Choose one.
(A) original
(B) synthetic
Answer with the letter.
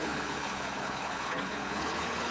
B